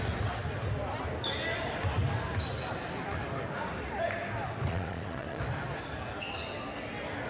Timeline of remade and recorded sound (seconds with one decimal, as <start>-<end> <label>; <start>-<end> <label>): 0.0-4.7 recorded; 4.7-5.4 remade; 5.4-7.3 recorded